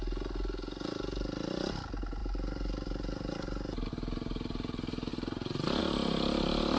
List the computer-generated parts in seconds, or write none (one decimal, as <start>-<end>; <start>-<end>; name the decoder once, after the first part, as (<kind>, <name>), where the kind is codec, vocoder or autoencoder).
none

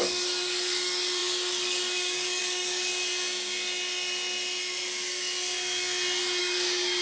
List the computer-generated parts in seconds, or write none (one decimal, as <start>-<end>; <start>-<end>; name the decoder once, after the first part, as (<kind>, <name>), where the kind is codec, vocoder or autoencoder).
0.0-2.9 (codec, DAC); 6.4-7.0

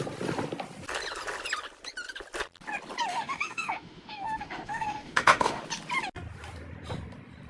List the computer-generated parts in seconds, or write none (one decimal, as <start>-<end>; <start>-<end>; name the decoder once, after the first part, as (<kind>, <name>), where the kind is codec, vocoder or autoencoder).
3.1-5.6 (autoencoder, DAC-VAE)